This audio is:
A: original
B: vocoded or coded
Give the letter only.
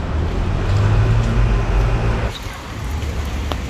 A